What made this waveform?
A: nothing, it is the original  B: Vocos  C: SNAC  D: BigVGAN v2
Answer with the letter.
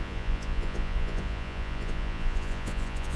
B